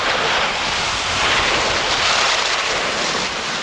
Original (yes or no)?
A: yes